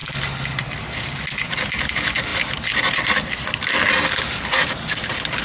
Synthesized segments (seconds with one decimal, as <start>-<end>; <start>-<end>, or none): none